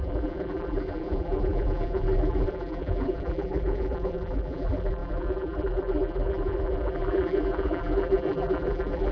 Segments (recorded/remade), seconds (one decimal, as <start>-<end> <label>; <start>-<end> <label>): 0.0-9.1 remade